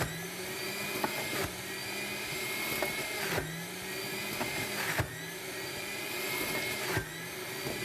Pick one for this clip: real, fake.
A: real